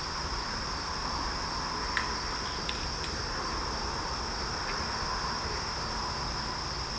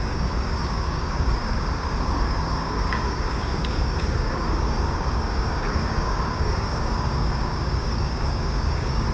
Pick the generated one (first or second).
second